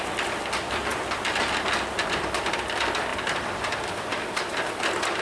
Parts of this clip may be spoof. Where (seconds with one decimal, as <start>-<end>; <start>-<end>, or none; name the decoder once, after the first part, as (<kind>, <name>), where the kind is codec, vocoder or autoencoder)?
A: 0.0-0.9 (vocoder, BigVGAN v2); 2.2-5.2